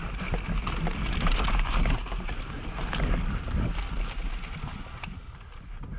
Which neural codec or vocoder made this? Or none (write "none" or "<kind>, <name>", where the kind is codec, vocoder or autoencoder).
none